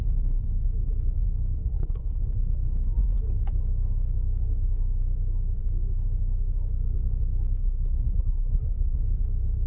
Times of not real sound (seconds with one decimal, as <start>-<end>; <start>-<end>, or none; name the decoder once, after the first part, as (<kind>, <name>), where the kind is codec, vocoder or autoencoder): 1.5-2.2 (codec, SNAC); 7.6-9.0